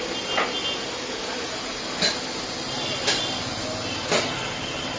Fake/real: real